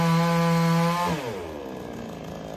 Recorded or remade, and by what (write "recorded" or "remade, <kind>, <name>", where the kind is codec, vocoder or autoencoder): recorded